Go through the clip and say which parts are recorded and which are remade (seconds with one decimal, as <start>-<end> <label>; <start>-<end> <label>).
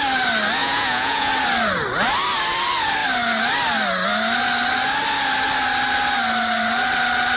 0.0-0.6 recorded; 0.6-1.3 remade; 1.3-7.4 recorded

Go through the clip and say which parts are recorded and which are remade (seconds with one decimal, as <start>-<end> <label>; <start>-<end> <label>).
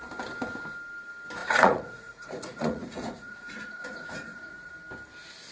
0.0-1.4 recorded; 1.4-4.7 remade; 4.7-5.5 recorded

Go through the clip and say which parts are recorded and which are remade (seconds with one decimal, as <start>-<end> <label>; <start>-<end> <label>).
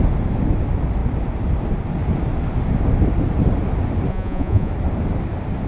0.0-4.1 recorded; 4.1-4.7 remade; 4.7-5.7 recorded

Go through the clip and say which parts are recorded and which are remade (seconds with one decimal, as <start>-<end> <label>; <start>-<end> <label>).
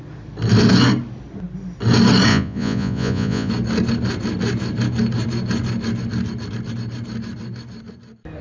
0.0-2.3 recorded; 2.3-3.5 remade; 3.5-8.4 recorded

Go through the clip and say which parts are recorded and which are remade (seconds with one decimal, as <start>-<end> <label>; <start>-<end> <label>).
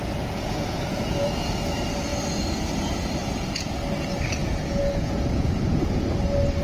0.0-1.5 remade; 1.5-3.2 recorded; 3.2-3.7 remade; 3.7-4.4 recorded; 4.4-6.1 remade; 6.1-6.6 recorded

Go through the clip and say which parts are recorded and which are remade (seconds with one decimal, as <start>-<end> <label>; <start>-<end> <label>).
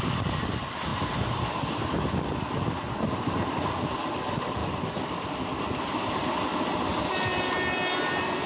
0.0-8.5 recorded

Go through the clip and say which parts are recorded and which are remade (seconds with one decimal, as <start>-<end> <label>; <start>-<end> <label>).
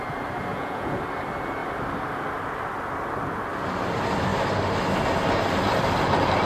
0.0-0.5 recorded; 0.5-1.0 remade; 1.0-6.5 recorded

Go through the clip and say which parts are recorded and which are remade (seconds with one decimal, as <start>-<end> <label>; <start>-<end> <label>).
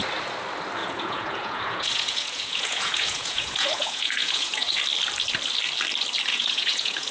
0.0-0.8 recorded; 0.8-4.8 remade; 4.8-6.3 recorded; 6.3-7.1 remade